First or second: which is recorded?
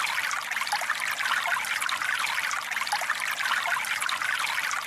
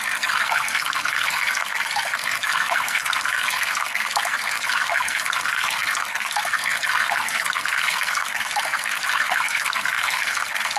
first